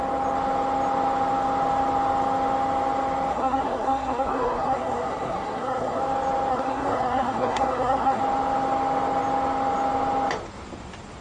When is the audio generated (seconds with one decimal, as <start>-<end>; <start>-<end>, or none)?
3.3-6.0; 6.5-8.2